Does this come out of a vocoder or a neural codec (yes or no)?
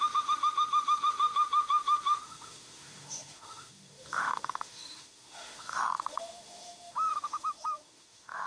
yes